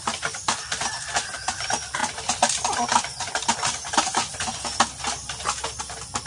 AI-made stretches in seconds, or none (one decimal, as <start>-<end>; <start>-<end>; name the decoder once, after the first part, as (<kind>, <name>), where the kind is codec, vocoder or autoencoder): 0.0-2.0 (vocoder, BigVGAN v2); 5.8-6.3